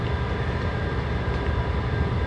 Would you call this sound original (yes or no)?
yes